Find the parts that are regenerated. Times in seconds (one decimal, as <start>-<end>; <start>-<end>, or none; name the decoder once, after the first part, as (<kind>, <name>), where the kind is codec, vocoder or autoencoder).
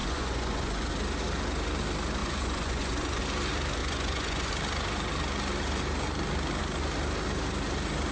0.0-0.9 (vocoder, Vocos); 2.2-3.2; 3.8-4.5